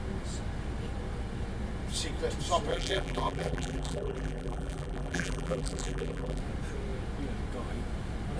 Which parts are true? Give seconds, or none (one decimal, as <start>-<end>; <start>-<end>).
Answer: 0.0-2.7; 6.4-8.4